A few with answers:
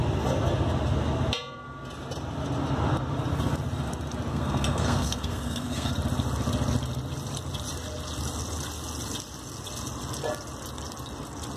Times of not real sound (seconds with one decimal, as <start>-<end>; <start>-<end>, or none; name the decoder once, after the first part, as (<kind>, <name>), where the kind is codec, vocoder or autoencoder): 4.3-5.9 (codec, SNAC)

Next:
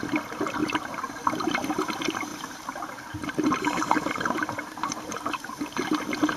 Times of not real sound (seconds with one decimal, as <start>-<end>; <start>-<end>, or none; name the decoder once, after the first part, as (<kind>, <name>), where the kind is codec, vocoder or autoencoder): 0.6-1.1 (vocoder, BigVGAN v2); 2.3-5.6

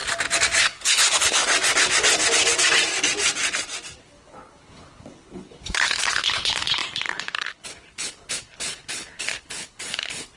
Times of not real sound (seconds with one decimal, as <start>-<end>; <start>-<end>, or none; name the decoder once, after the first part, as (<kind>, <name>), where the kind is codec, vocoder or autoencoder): 0.6-1.4 (codec, HILCodec); 4.0-10.4

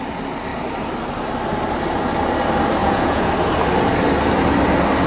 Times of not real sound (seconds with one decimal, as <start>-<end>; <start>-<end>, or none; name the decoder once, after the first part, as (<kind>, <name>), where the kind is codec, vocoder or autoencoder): 2.8-3.3 (vocoder, Vocos)

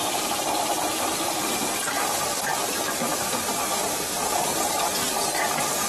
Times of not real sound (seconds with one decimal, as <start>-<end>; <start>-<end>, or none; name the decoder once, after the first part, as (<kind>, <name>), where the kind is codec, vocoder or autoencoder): 0.0-3.5 (vocoder, BigVGAN v2); 4.5-5.9